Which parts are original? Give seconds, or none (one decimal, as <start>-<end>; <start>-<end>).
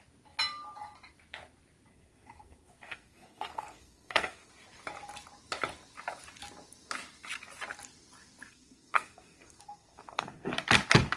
0.0-1.9; 4.5-8.5; 10.5-11.2